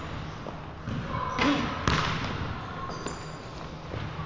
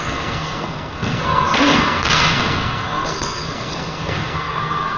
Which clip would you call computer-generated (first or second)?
second